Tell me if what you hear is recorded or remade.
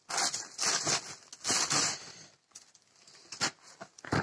recorded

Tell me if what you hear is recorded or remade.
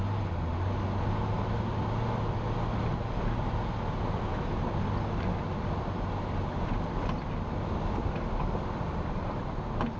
recorded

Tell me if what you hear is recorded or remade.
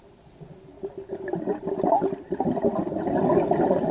recorded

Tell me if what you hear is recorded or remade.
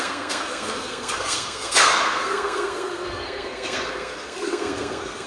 remade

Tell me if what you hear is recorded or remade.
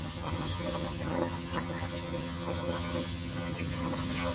remade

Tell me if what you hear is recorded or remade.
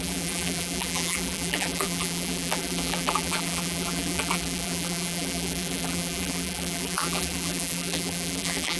remade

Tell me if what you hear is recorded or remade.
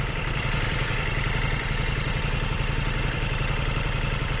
remade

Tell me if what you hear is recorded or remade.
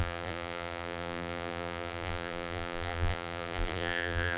remade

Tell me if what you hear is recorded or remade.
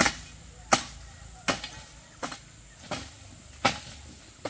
recorded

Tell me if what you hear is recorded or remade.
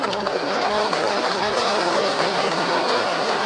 remade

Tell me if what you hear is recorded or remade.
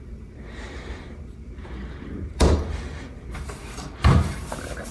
remade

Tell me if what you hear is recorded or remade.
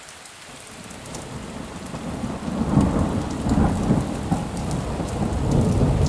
recorded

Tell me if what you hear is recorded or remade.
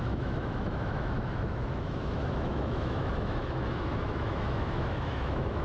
remade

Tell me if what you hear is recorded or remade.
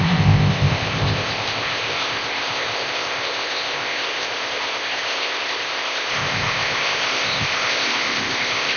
remade